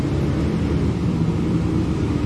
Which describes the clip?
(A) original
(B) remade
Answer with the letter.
A